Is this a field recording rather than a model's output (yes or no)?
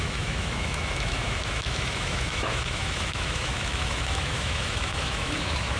no